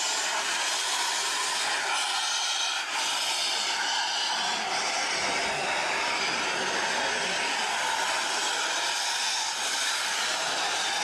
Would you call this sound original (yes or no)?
yes